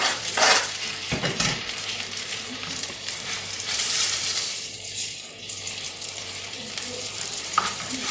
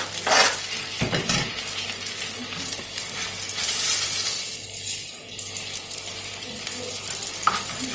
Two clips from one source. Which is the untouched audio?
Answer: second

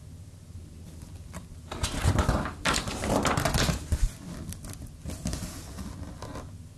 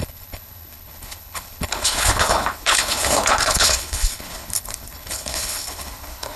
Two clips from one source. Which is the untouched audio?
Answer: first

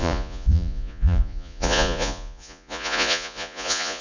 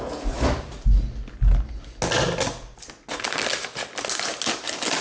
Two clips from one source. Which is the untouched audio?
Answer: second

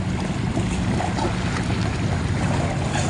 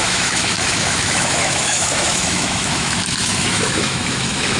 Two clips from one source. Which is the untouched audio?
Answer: first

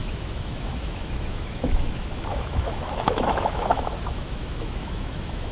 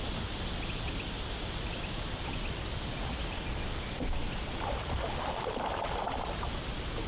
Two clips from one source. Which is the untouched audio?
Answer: second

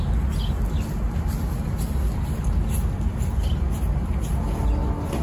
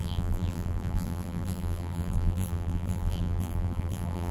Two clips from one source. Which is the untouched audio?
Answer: first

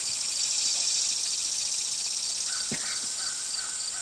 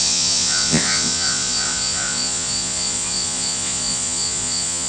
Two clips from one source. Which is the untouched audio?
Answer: first